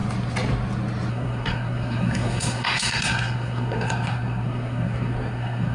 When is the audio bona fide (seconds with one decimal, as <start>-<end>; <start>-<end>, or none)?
0.0-1.1